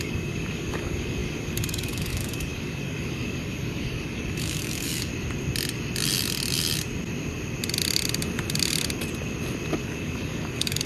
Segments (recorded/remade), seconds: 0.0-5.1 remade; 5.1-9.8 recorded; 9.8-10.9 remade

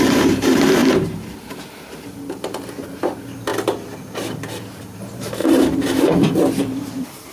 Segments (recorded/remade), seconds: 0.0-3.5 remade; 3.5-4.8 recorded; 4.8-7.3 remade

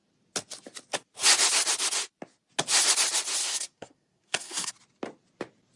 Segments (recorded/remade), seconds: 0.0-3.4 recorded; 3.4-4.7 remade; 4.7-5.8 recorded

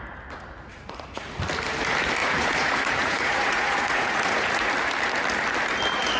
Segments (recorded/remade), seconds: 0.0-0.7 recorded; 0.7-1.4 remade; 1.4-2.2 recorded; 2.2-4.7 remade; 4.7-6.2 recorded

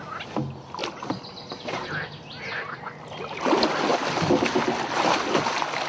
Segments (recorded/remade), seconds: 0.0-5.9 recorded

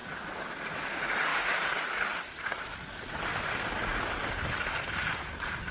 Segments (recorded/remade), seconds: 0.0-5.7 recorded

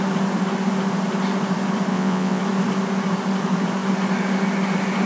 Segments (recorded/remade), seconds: 0.0-1.9 recorded; 1.9-2.4 remade; 2.4-5.1 recorded